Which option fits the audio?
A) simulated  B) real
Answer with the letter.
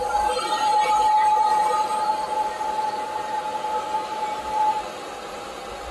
A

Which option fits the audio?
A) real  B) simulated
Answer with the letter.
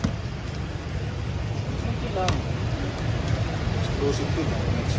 B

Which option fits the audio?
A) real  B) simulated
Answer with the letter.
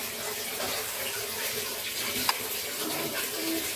B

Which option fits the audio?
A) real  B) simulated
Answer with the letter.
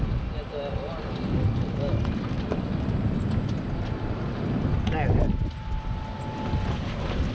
A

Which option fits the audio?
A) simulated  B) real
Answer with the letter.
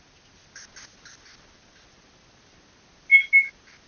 B